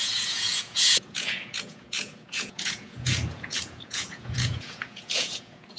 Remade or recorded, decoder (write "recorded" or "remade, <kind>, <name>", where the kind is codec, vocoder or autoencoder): remade, vocoder, Vocos